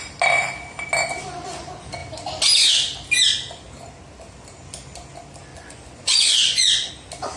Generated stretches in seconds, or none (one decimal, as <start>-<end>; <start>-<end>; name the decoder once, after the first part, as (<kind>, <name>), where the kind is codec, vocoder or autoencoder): 5.5-6.9 (vocoder, Vocos)